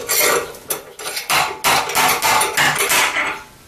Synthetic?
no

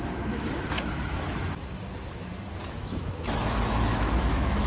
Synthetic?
yes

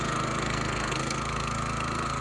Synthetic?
yes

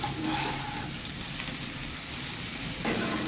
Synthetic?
no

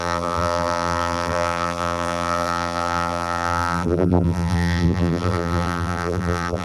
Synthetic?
yes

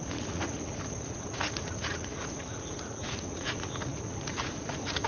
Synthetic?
yes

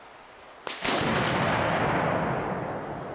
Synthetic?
no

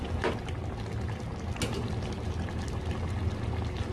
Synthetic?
no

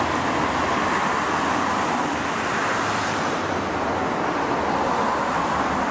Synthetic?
yes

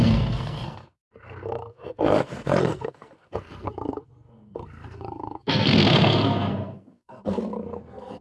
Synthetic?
yes